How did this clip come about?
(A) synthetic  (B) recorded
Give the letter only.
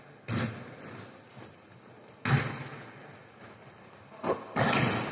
B